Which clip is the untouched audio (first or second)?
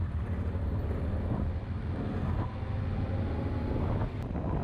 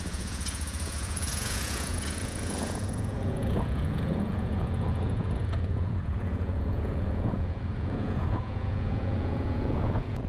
first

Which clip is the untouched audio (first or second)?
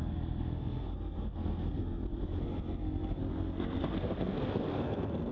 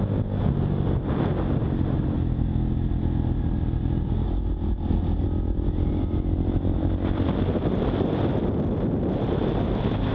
second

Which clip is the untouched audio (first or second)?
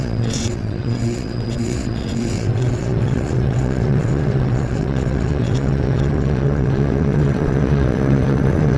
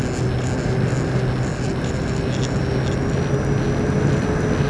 second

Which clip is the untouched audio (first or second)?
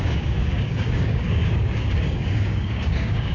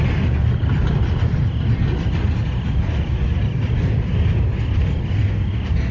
second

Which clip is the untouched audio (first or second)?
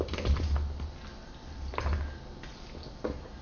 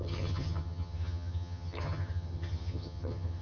first